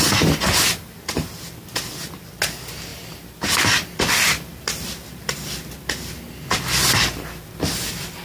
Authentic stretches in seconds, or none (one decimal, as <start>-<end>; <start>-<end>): 0.0-2.9; 6.1-8.2